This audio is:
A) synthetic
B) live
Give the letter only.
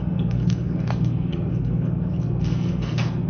A